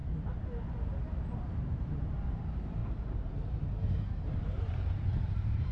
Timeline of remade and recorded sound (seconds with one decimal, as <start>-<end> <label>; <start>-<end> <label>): 0.0-1.6 recorded; 1.6-2.8 remade; 2.8-3.3 recorded; 3.3-5.7 remade